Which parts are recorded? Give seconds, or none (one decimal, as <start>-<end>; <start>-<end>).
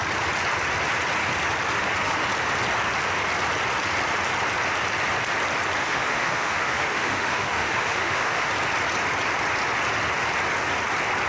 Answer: 0.0-5.8; 8.5-11.3